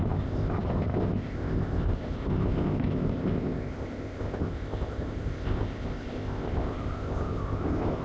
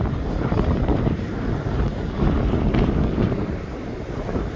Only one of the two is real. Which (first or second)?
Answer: second